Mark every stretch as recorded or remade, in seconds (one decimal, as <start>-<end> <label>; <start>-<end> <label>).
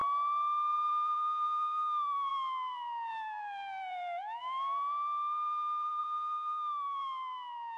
0.0-0.9 recorded; 0.9-7.8 remade